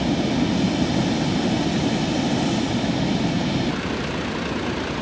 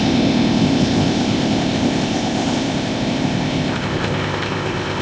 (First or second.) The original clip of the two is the first